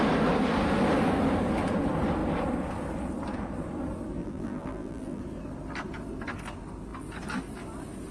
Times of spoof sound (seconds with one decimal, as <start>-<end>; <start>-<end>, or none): 4.2-5.2

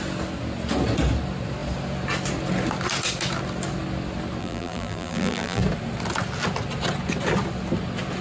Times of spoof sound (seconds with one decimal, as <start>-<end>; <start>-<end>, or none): 4.4-5.6